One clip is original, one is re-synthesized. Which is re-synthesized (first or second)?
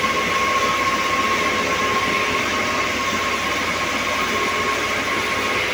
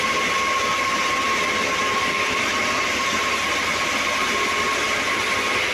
second